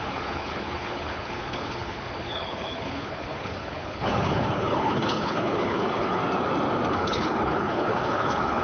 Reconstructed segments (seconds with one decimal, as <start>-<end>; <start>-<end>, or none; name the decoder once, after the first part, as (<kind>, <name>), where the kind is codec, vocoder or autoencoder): 0.0-6.2 (codec, HILCodec); 6.9-8.6